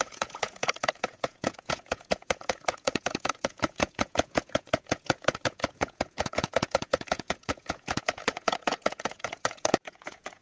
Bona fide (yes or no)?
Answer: no